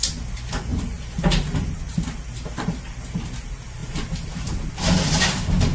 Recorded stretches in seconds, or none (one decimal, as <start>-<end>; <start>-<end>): 0.0-5.7